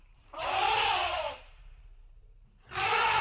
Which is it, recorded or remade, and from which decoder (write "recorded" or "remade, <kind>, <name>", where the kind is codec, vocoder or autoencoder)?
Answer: remade, vocoder, BigVGAN v2